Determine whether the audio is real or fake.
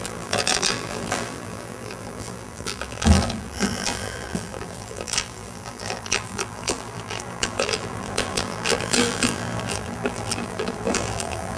fake